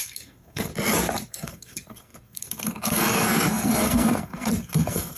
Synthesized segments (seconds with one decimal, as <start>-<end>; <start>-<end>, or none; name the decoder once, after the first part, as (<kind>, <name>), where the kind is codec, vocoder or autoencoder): 0.0-0.7 (codec, SNAC); 1.3-5.2